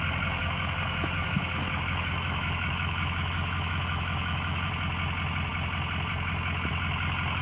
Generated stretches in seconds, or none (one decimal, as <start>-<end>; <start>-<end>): 0.4-4.7